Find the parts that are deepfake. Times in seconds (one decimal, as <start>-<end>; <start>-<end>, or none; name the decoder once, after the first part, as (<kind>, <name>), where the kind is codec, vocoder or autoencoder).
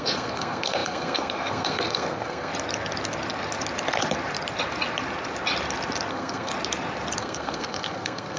0.0-2.5 (codec, SNAC); 6.1-6.5; 7.2-8.4